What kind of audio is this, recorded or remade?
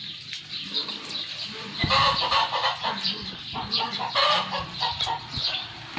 recorded